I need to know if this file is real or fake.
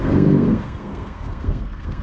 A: fake